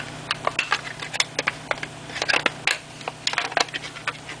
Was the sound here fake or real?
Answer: real